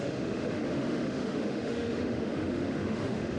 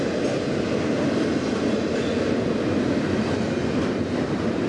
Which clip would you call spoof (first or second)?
first